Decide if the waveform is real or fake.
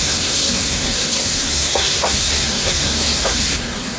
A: fake